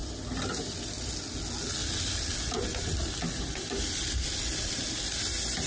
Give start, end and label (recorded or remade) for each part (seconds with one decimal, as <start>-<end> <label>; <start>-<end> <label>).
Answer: 0.0-1.1 remade; 1.1-1.8 recorded; 1.8-5.2 remade; 5.2-5.7 recorded